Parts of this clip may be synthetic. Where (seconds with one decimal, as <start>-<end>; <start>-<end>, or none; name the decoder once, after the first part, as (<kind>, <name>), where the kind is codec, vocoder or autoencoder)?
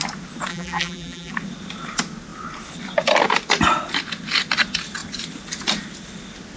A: 0.5-1.3 (vocoder, BigVGAN v2)